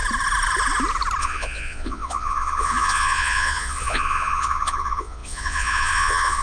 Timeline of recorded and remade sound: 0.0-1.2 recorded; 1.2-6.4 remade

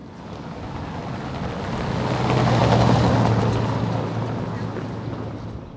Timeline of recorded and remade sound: 0.0-5.8 recorded

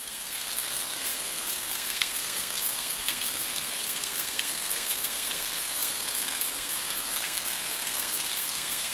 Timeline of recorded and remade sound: 0.0-8.9 remade

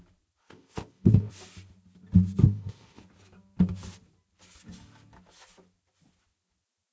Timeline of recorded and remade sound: 0.0-0.4 recorded; 0.4-1.3 remade; 1.3-2.4 recorded; 2.4-3.0 remade; 3.0-6.9 recorded